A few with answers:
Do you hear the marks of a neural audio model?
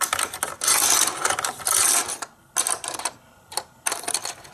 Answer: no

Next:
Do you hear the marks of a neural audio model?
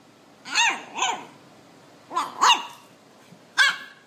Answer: no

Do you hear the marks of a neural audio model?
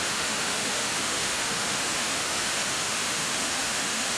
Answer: yes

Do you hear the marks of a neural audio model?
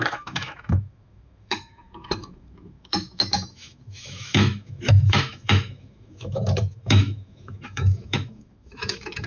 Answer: yes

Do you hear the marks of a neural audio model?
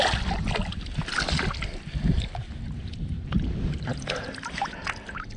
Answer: no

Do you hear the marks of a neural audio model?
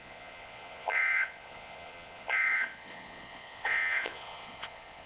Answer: yes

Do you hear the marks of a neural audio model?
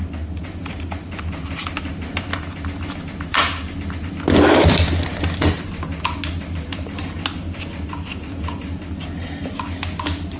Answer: no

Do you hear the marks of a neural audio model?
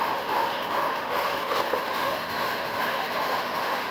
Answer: yes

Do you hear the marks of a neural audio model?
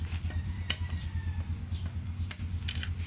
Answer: no